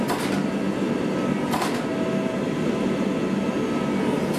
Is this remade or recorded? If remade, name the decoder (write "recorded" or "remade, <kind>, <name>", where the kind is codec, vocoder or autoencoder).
recorded